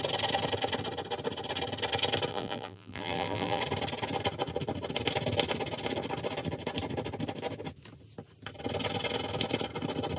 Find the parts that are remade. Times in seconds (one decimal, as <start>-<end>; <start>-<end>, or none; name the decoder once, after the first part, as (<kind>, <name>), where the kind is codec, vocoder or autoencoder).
2.3-3.6 (vocoder, BigVGAN v2)